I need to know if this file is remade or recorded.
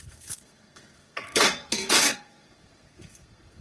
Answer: remade